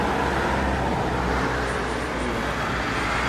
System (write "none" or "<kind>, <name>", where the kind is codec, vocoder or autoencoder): none